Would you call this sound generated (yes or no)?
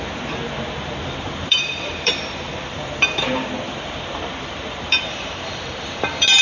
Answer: yes